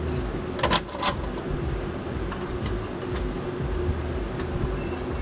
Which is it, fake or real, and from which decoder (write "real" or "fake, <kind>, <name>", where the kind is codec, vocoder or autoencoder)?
real